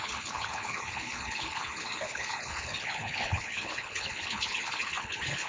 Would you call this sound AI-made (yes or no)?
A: yes